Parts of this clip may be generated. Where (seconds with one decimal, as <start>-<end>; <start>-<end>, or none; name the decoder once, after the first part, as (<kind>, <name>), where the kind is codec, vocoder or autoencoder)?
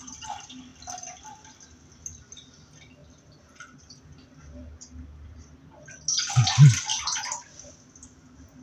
none